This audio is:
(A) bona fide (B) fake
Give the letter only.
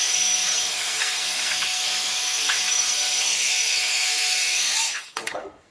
B